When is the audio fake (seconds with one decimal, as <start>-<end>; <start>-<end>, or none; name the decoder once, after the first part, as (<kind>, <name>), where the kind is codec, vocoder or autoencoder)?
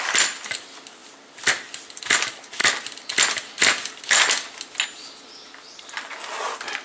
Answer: none